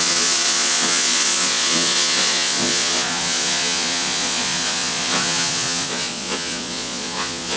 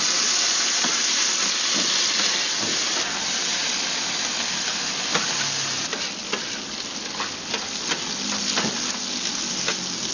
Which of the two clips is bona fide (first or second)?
second